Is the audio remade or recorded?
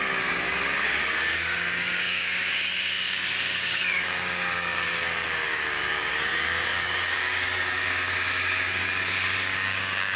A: remade